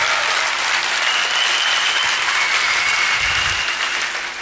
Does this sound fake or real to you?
real